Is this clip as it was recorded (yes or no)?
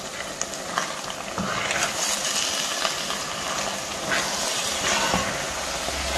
yes